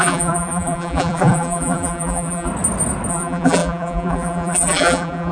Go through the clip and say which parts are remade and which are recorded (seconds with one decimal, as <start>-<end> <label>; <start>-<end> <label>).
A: 0.0-2.5 remade; 2.5-3.1 recorded; 3.1-5.3 remade